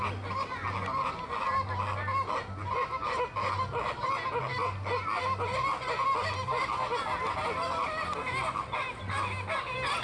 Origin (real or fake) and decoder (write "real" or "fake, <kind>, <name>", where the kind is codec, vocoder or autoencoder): real